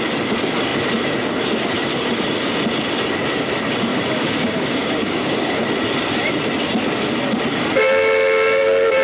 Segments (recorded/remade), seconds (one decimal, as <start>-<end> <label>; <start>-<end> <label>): 0.0-3.9 recorded; 3.9-5.6 remade; 5.6-9.0 recorded